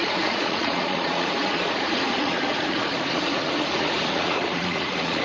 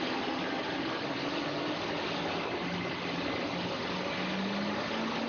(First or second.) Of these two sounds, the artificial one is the first